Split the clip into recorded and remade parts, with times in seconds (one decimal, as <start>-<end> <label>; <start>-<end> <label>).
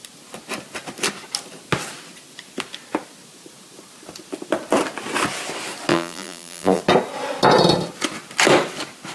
0.0-5.9 recorded; 5.9-6.8 remade; 6.8-9.1 recorded